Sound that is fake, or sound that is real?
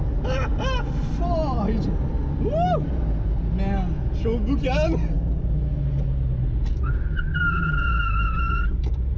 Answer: real